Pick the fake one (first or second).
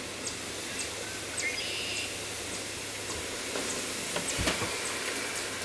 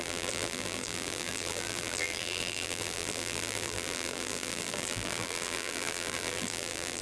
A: second